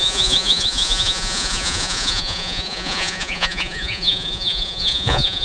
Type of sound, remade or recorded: remade